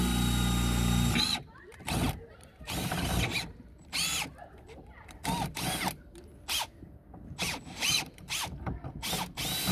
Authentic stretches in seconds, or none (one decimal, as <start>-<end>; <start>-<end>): 0.0-7.4; 9.2-9.7